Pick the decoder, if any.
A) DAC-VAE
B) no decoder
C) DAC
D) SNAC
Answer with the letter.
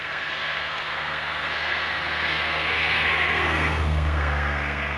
D